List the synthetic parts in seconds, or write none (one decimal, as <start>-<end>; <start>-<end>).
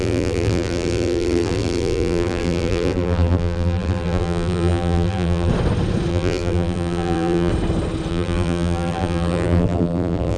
0.0-5.5; 6.1-7.5; 8.1-10.4